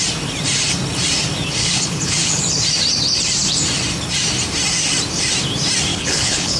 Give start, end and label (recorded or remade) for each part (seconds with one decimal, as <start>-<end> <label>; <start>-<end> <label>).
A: 0.0-1.6 recorded; 1.6-2.4 remade; 2.4-5.9 recorded; 5.9-6.6 remade